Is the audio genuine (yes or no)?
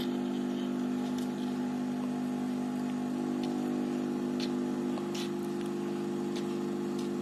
yes